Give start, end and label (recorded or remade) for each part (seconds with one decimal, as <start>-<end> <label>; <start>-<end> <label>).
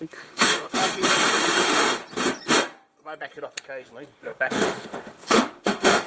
0.0-0.8 remade; 0.8-1.4 recorded; 1.4-2.0 remade; 2.0-4.2 recorded; 4.2-6.1 remade